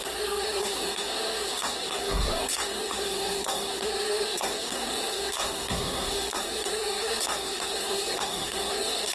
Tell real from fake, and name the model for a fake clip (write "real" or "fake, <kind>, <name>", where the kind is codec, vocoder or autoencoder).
fake, codec, SNAC